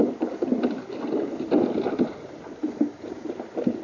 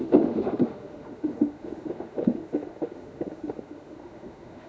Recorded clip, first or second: first